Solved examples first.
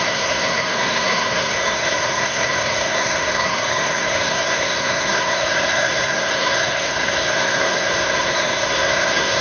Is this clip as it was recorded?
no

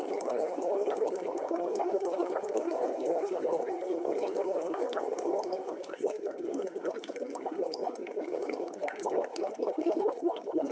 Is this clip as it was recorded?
no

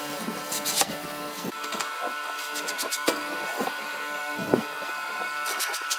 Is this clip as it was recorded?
no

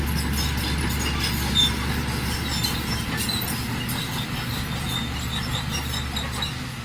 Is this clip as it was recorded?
yes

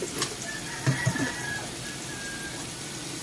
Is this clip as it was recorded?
yes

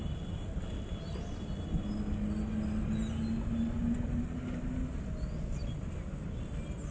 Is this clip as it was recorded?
yes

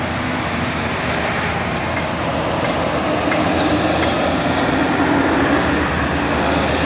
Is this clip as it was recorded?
yes